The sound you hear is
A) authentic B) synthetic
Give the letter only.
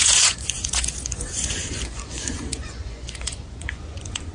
B